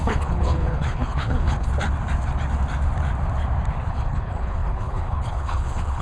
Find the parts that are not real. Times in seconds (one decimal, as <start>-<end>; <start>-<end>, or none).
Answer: 0.0-1.7; 3.9-6.0